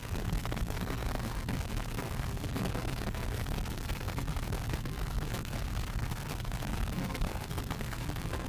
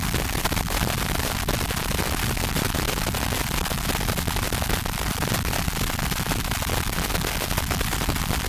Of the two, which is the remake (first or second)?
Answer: first